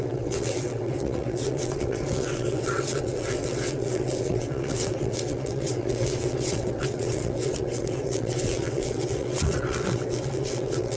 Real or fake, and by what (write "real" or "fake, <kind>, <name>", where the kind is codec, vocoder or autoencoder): fake, vocoder, WaveNeXt